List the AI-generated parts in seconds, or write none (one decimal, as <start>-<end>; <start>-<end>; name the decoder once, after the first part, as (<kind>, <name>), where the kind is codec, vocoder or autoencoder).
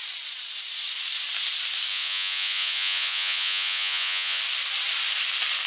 1.9-4.4 (vocoder, Vocos)